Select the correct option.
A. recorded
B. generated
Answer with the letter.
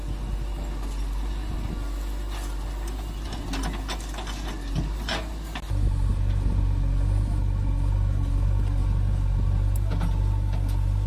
A